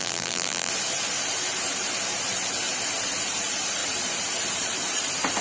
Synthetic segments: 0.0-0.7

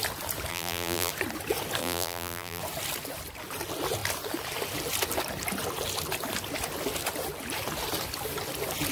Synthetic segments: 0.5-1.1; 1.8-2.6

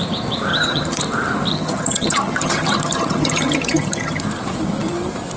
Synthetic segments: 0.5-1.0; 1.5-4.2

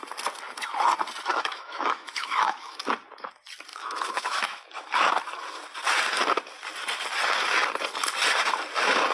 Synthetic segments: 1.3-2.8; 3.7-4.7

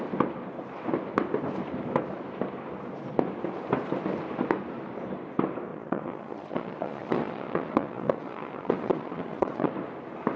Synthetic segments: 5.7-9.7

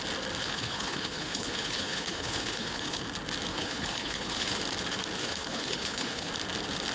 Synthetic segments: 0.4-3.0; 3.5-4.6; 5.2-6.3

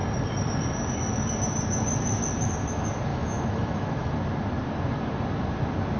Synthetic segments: 3.1-4.1